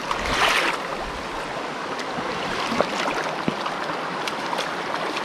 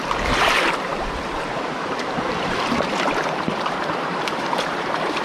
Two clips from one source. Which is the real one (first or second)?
first